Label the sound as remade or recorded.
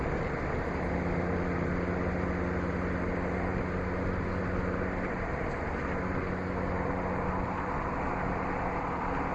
recorded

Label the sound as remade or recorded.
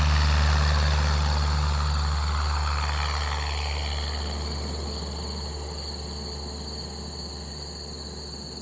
recorded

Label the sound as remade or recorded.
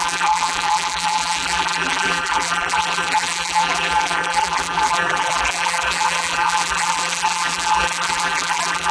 remade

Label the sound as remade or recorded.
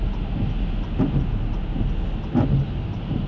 recorded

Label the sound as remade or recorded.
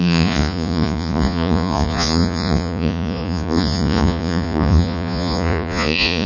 remade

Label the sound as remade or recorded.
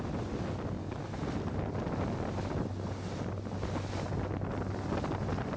recorded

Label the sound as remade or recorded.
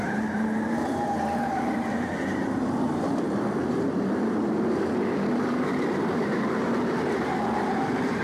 remade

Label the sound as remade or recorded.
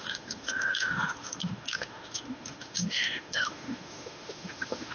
remade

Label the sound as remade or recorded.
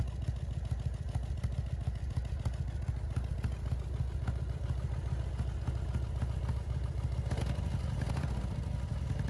recorded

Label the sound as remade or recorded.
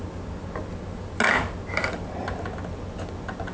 recorded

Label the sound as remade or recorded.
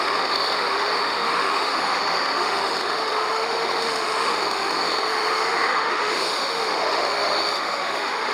remade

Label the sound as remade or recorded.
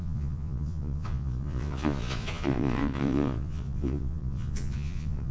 remade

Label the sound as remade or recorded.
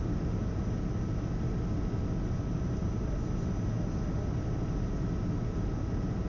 recorded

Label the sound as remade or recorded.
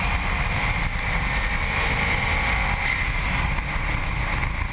recorded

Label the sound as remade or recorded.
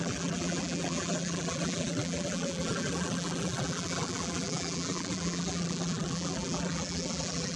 remade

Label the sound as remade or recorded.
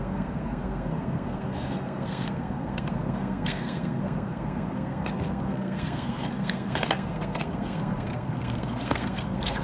remade